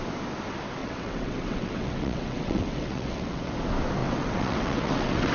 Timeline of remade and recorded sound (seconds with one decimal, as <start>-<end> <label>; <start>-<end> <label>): 0.0-0.8 recorded; 0.8-3.5 remade; 3.5-4.0 recorded; 4.0-5.3 remade